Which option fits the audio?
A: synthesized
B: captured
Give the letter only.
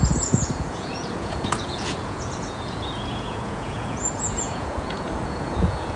A